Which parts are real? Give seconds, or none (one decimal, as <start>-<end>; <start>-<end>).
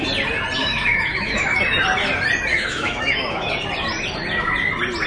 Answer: 0.0-0.6; 1.6-2.5; 3.5-5.1